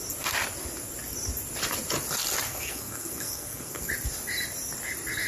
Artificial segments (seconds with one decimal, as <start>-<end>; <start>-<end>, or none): 2.5-3.9